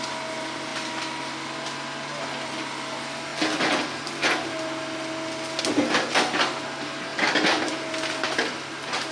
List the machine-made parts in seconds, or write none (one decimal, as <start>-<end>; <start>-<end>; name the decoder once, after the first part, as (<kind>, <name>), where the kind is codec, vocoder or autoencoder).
none

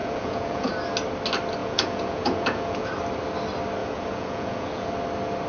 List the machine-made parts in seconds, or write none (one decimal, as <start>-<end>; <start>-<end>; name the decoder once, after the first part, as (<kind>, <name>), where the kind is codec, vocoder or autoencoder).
0.0-0.7 (vocoder, Vocos); 1.6-2.9; 3.8-4.9

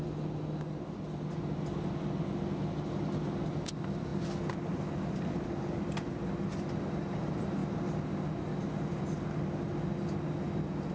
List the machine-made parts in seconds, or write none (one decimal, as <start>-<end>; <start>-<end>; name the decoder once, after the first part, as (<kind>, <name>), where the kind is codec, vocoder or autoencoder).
none

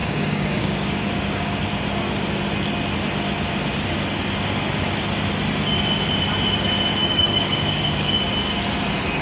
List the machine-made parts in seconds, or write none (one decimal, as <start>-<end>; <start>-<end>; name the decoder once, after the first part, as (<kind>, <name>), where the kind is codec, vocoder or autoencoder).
0.0-1.6 (codec, DAC); 7.0-8.2

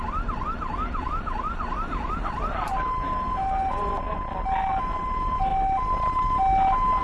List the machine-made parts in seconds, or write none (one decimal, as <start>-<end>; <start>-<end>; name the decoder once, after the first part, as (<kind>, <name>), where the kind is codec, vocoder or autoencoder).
none

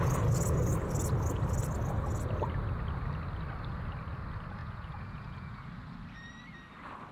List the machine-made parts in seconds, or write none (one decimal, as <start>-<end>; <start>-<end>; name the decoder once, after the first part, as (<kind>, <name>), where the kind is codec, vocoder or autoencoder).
4.6-5.7 (vocoder, Vocos)

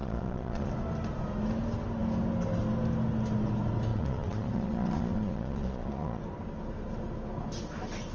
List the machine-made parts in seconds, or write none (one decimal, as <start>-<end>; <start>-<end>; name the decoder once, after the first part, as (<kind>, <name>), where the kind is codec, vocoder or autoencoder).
0.0-0.7 (vocoder, Vocos); 3.9-6.2

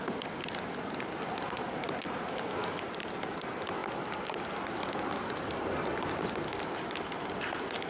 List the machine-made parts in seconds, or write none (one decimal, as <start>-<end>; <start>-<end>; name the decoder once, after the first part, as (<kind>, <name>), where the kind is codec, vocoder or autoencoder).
none